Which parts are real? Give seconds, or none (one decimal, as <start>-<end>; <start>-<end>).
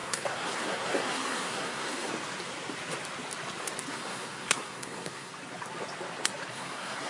2.1-3.9; 5.3-6.5